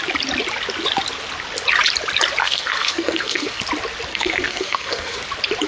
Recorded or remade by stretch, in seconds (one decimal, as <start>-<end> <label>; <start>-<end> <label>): 0.0-2.4 recorded; 2.4-3.6 remade; 3.6-4.1 recorded; 4.1-5.2 remade; 5.2-5.7 recorded